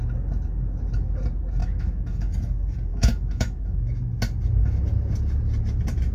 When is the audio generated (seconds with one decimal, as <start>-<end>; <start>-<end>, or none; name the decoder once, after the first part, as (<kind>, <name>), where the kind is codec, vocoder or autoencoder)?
1.6-2.3 (autoencoder, DAC-VAE); 2.9-3.9